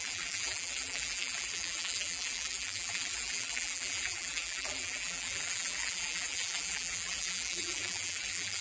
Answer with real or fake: fake